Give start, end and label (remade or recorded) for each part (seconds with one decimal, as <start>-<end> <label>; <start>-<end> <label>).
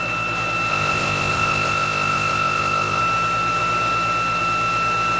0.0-0.7 recorded; 0.7-3.0 remade; 3.0-5.2 recorded